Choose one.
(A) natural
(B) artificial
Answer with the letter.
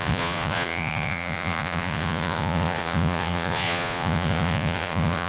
B